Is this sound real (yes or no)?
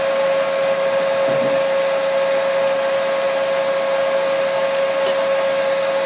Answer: yes